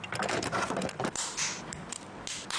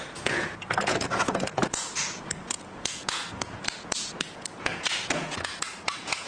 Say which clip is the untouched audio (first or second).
first